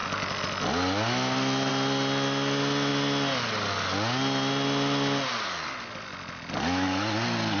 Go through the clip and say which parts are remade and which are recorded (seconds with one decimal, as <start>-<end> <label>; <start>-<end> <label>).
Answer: 0.0-7.6 recorded